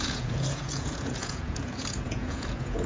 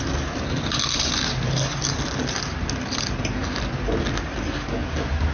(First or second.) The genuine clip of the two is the second